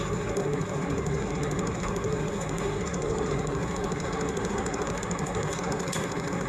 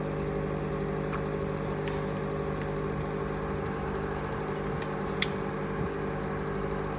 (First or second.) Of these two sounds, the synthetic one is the first